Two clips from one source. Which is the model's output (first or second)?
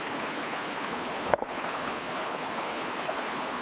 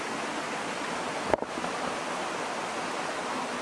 first